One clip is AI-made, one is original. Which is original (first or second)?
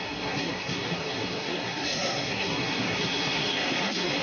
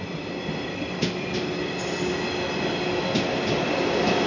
second